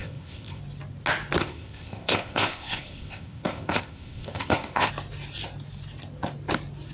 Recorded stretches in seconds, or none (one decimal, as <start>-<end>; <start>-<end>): 0.6-1.4; 4.9-6.9